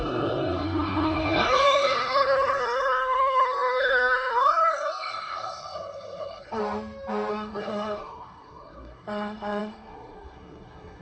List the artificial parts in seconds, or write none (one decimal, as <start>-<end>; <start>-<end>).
0.0-6.6; 7.3-11.0